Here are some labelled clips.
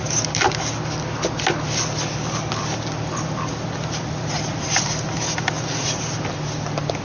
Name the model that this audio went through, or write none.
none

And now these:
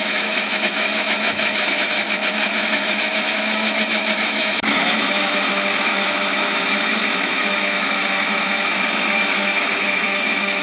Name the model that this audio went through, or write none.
autoencoder, DAC-VAE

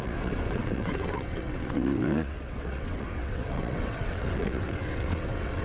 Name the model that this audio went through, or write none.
vocoder, WaveNeXt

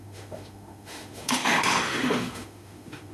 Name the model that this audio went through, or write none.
autoencoder, DAC-VAE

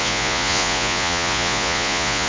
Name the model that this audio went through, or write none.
vocoder, Vocos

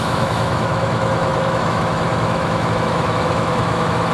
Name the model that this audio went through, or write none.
autoencoder, DAC-VAE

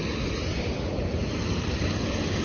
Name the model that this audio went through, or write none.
none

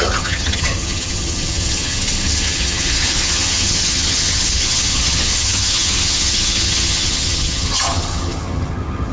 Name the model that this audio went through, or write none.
vocoder, HiFi-GAN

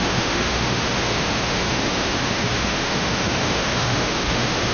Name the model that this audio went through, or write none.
autoencoder, DAC-VAE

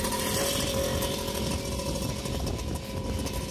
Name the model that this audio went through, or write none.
none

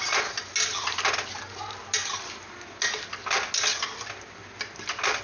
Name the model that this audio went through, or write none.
none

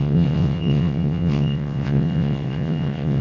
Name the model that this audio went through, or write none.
vocoder, WaveNeXt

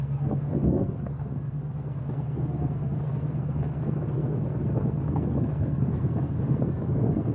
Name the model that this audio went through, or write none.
codec, SNAC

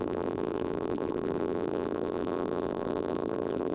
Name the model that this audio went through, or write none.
vocoder, BigVGAN v2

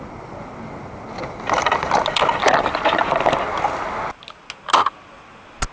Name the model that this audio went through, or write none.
none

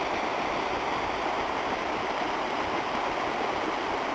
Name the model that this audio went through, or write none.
none